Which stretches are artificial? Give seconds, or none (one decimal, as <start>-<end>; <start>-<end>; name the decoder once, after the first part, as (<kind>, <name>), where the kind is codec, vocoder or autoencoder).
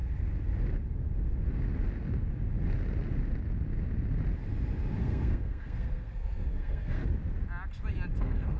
5.0-7.0 (codec, SNAC); 8.2-8.6